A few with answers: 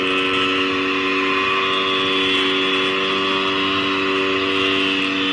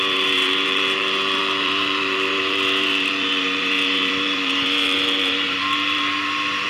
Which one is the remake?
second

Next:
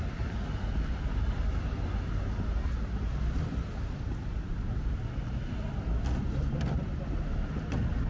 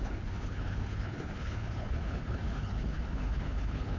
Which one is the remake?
second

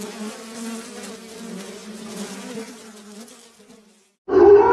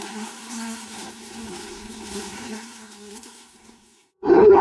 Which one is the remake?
second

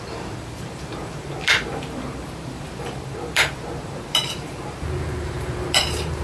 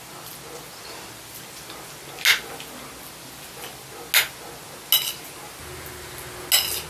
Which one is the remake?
first